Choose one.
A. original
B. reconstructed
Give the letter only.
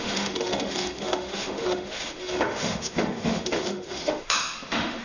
B